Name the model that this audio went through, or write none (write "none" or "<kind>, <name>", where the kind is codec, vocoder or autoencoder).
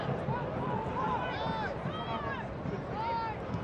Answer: none